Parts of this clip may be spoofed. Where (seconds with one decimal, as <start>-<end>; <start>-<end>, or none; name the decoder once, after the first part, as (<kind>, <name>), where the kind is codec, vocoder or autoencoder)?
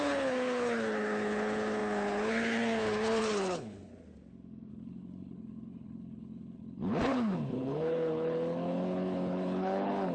0.0-3.9 (codec, HILCodec); 4.7-10.1